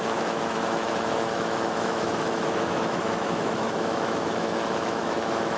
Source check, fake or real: fake